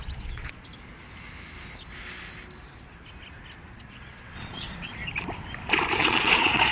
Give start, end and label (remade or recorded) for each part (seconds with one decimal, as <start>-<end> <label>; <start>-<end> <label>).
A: 0.0-0.7 remade; 0.7-3.7 recorded; 3.7-5.0 remade; 5.0-6.0 recorded; 6.0-6.7 remade